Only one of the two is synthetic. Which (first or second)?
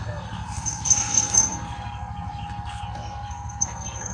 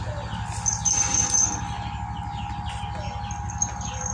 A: first